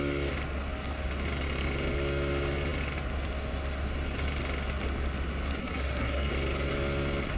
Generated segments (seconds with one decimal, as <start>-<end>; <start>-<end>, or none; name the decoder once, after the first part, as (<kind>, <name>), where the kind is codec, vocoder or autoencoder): 5.6-6.3 (codec, SNAC)